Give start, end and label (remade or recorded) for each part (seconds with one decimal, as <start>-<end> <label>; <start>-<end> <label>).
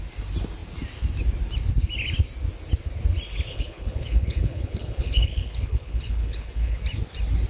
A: 0.0-3.5 recorded; 3.5-6.8 remade; 6.8-7.5 recorded